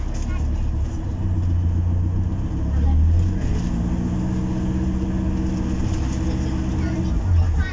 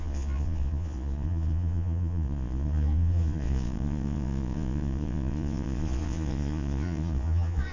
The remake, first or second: second